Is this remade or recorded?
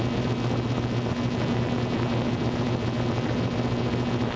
recorded